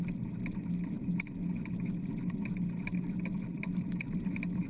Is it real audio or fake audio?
real